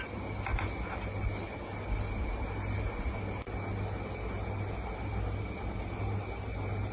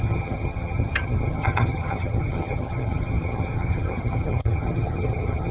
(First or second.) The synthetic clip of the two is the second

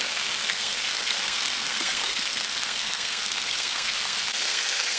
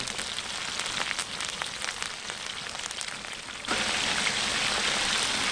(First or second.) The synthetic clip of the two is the first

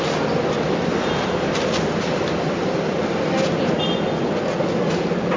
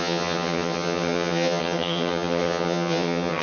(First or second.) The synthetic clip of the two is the second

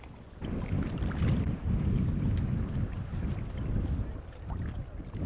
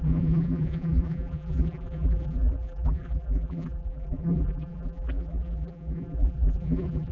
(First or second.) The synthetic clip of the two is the second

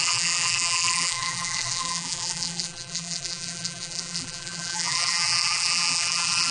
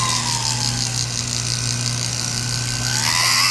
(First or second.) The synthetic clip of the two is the first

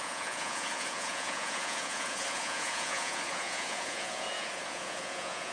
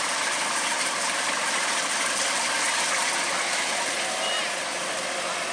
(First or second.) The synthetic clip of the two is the first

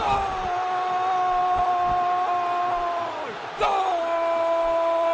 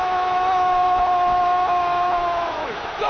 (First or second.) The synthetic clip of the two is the second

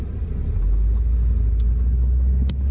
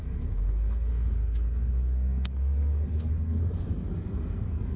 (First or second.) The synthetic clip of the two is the second